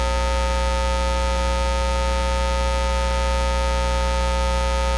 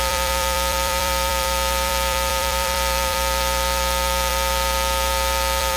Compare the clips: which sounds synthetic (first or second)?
second